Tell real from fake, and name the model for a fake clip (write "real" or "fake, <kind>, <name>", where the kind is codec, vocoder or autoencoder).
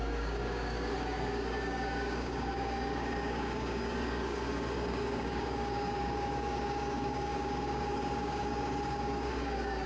fake, codec, DAC